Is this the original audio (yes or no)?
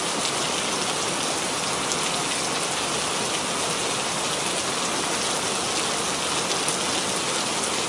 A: yes